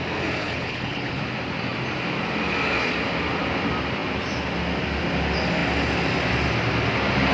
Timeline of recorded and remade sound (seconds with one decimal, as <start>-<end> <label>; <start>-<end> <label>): 0.0-0.4 recorded; 0.4-1.2 remade; 1.2-7.3 recorded